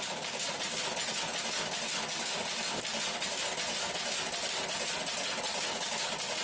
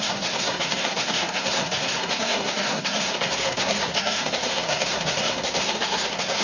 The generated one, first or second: second